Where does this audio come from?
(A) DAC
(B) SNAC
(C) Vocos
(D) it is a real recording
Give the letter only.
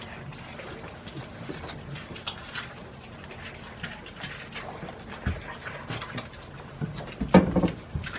D